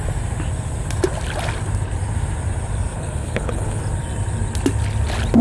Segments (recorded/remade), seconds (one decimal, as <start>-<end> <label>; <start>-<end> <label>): 0.0-2.9 recorded; 2.9-3.8 remade; 3.8-5.4 recorded